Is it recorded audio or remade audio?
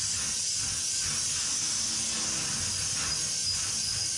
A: recorded